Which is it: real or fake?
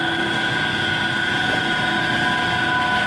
real